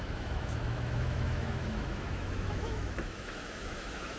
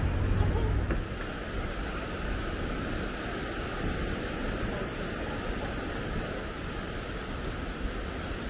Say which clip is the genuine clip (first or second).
second